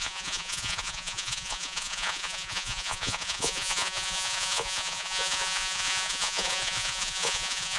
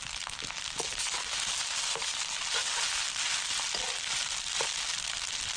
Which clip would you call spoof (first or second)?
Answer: first